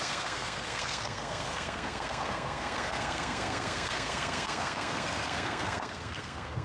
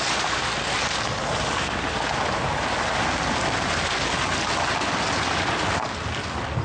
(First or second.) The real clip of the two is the second